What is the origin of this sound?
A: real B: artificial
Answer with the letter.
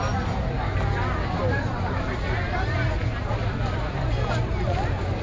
A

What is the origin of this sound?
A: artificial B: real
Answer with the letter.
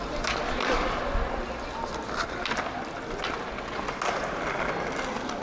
B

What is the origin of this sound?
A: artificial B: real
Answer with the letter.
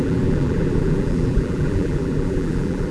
A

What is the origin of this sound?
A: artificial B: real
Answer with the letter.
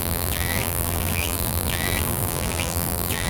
A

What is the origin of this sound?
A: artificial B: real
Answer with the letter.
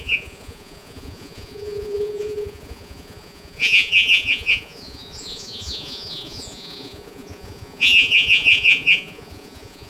A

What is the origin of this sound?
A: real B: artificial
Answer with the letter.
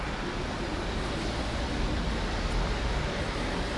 A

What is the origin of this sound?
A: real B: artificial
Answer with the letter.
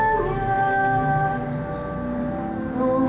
A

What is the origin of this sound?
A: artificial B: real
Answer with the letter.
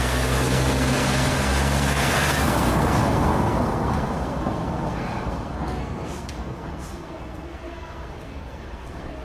A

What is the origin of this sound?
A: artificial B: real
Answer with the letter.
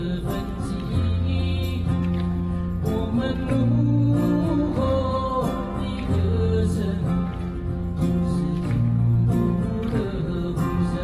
B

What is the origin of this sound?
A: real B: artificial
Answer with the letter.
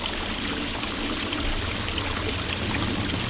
A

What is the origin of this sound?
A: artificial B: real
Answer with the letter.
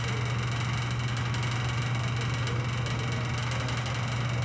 B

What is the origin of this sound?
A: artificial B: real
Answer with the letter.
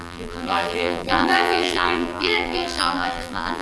A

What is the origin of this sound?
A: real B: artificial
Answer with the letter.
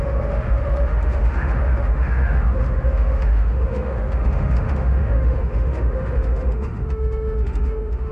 B